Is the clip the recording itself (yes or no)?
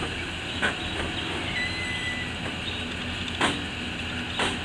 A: yes